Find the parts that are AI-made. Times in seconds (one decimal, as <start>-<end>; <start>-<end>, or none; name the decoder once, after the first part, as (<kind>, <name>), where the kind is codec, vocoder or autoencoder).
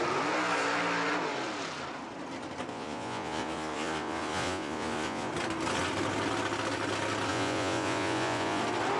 2.7-5.3 (vocoder, Vocos); 7.3-8.6